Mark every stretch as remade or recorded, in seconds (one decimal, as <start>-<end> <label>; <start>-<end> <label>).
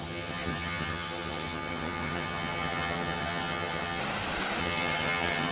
0.0-4.0 remade; 4.0-4.6 recorded; 4.6-5.5 remade